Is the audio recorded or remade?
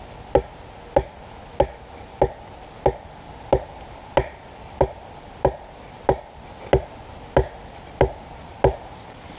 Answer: recorded